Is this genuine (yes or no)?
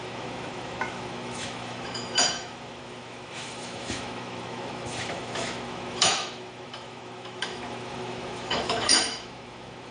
no